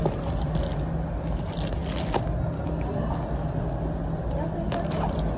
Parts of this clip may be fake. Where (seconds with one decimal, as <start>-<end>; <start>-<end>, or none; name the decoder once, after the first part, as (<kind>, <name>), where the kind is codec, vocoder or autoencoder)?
none